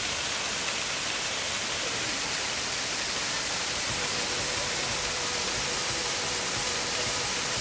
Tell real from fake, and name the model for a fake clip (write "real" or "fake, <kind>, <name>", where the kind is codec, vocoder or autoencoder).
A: real